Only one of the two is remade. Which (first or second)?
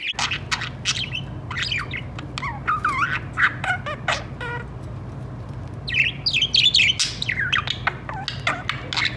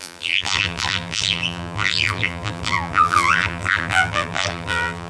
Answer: second